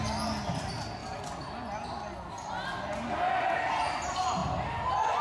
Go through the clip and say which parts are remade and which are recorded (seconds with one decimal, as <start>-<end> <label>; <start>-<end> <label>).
0.0-5.2 recorded